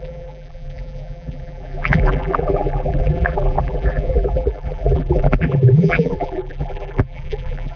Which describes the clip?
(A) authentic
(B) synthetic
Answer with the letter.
B